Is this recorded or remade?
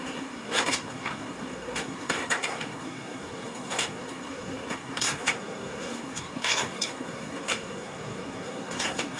remade